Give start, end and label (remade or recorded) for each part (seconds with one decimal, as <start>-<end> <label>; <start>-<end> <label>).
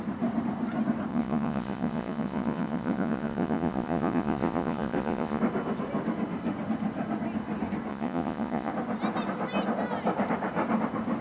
0.0-1.1 recorded; 1.1-5.4 remade; 5.4-7.9 recorded; 7.9-8.7 remade; 8.7-11.2 recorded